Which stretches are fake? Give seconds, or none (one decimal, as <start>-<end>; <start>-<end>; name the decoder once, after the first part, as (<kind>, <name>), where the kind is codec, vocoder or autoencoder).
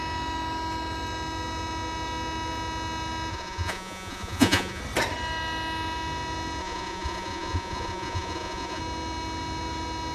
3.3-4.8 (vocoder, Vocos); 6.6-8.8